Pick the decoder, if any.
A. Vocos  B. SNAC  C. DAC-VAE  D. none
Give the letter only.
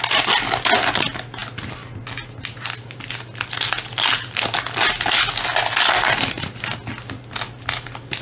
D